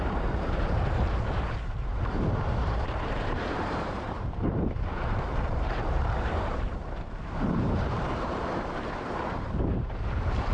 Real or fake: fake